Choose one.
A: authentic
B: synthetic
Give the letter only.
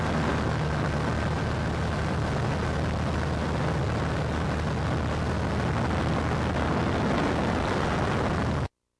A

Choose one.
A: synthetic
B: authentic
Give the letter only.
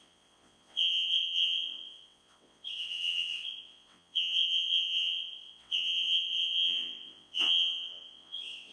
A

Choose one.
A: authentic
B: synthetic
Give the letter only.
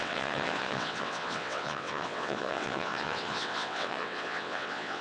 B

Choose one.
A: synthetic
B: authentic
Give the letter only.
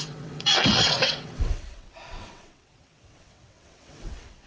A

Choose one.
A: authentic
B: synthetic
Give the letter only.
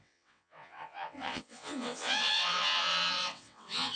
B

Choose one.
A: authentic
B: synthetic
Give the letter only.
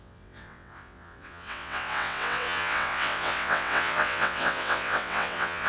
B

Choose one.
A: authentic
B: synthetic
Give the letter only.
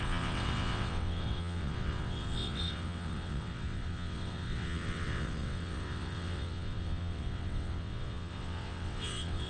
B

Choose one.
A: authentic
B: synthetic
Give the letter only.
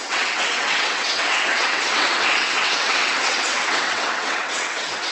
B